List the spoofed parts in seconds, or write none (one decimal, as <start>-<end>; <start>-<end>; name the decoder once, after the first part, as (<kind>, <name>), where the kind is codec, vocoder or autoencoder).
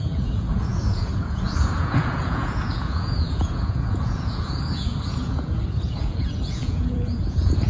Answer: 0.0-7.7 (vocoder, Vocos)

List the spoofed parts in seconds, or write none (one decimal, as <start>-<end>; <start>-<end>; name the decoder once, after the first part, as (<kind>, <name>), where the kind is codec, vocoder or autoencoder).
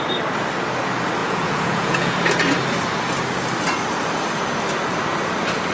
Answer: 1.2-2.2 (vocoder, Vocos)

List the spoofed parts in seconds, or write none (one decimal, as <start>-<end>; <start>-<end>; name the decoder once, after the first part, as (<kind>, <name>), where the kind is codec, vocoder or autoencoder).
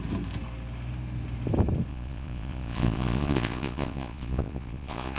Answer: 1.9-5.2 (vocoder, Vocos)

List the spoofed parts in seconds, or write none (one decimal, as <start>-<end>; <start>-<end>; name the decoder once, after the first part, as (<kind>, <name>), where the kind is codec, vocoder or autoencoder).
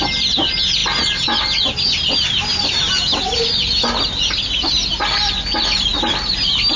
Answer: none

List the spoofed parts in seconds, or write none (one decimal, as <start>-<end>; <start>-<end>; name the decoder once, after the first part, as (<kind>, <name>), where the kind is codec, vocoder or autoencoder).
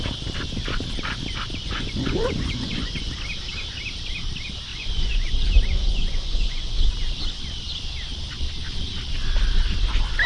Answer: 1.6-3.1 (vocoder, Vocos); 4.7-6.8